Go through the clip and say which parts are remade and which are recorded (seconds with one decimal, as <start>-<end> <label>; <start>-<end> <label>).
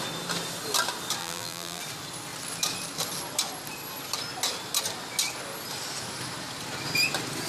0.0-1.2 recorded; 1.2-1.8 remade; 1.8-7.5 recorded